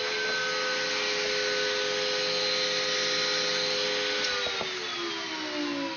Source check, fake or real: real